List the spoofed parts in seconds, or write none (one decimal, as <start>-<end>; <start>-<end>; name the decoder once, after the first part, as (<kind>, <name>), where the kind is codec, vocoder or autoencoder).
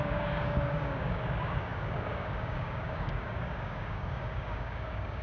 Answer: 0.0-5.2 (codec, DAC)